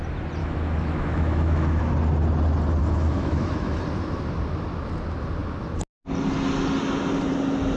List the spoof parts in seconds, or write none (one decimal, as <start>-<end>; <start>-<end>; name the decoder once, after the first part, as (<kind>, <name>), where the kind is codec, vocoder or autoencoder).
0.4-1.8 (autoencoder, DAC-VAE); 2.8-3.8